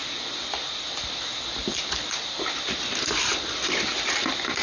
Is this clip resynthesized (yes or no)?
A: no